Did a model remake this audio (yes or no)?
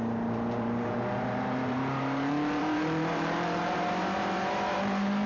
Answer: yes